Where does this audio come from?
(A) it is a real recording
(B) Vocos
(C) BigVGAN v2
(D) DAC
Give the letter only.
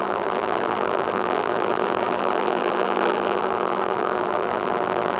C